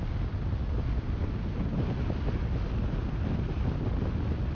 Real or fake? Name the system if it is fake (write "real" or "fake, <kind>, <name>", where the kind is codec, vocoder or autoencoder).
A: real